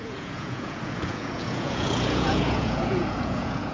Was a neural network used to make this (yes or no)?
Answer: yes